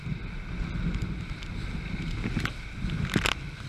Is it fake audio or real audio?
real